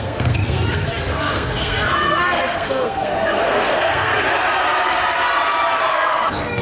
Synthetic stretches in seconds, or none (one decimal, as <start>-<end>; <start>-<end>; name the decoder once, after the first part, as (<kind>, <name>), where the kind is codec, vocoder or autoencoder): 0.0-4.1 (codec, SNAC); 5.9-6.6